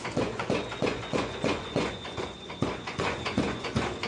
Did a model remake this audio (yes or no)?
yes